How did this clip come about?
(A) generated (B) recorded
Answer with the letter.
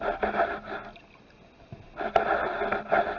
B